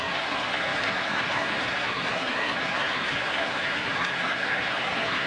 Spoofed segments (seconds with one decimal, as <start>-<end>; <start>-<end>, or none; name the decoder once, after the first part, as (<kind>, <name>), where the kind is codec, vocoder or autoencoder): 0.0-5.3 (codec, SNAC)